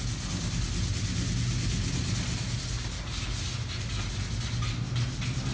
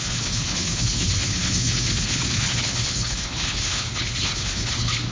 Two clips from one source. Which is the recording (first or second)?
first